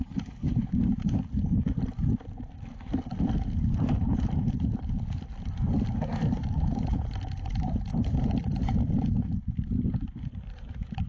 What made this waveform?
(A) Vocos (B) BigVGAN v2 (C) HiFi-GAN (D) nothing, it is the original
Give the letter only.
B